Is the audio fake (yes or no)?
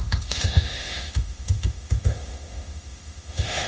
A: yes